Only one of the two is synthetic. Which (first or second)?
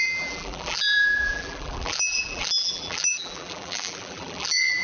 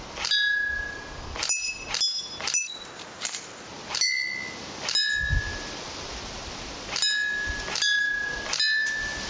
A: first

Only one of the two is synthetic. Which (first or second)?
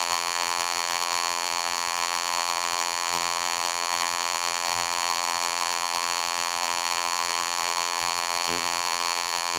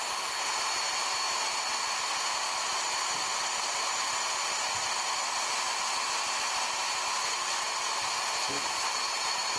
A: first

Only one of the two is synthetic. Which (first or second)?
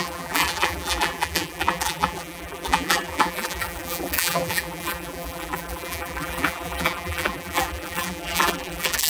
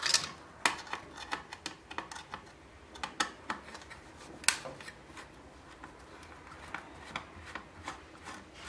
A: first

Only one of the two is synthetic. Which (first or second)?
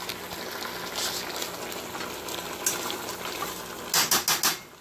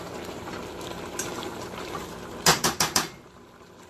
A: second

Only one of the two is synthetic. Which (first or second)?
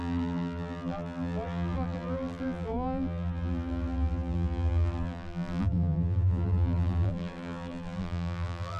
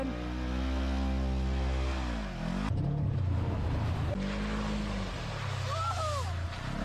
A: first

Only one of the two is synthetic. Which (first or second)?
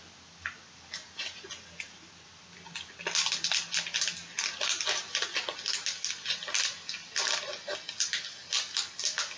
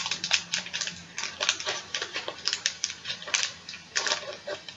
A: second